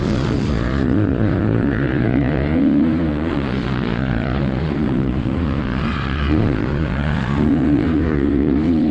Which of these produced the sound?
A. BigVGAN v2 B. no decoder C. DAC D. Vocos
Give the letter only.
D